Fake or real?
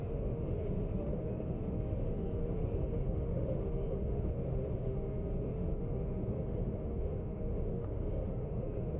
fake